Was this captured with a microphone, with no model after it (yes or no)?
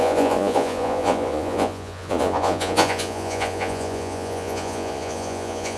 no